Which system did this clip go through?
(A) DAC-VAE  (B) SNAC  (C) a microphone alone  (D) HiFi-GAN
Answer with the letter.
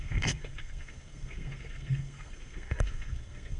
B